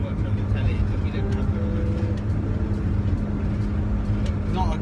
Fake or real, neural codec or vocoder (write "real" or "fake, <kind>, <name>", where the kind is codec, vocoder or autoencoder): real